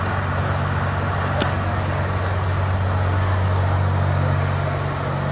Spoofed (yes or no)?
no